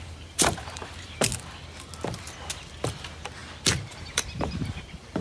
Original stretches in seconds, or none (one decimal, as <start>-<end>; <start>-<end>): 1.3-2.8; 3.4-4.0